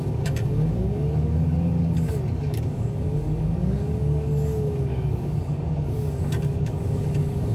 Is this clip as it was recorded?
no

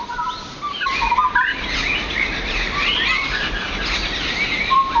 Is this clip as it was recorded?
no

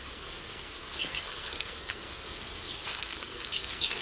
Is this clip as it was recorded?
no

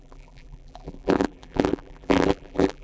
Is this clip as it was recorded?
no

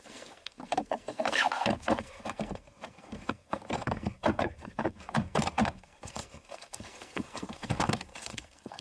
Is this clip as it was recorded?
no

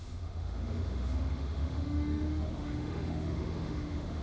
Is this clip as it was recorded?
no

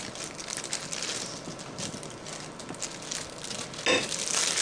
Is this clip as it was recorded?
yes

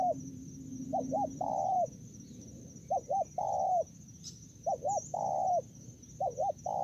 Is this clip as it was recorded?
no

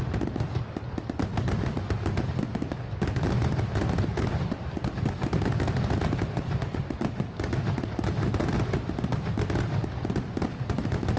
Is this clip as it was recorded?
yes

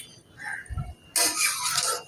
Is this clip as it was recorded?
yes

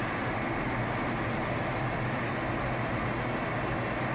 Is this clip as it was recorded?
yes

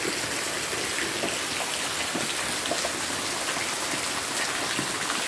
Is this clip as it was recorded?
yes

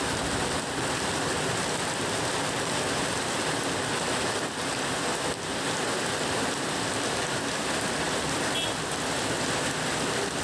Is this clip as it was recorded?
yes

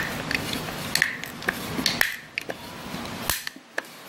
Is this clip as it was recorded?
yes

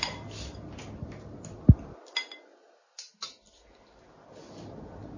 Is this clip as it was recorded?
yes